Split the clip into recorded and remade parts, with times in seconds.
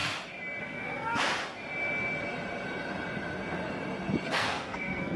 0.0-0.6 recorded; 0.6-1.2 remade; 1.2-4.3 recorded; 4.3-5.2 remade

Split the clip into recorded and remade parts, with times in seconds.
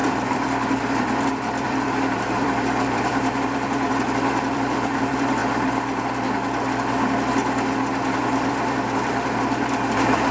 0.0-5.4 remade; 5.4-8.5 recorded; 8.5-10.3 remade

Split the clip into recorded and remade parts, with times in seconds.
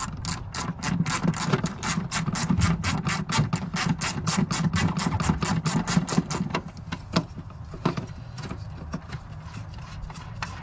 0.0-10.6 recorded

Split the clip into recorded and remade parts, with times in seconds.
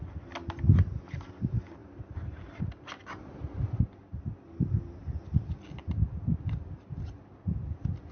0.0-1.8 recorded; 1.8-2.6 remade; 2.6-3.1 recorded; 3.1-3.8 remade; 3.8-8.1 recorded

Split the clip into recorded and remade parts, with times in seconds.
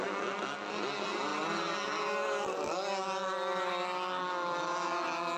0.0-5.4 recorded